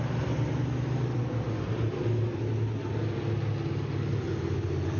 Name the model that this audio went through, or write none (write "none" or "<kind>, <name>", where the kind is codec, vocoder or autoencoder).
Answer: none